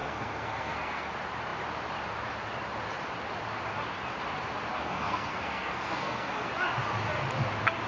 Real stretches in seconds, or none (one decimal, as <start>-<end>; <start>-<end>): 1.1-4.7; 6.5-7.9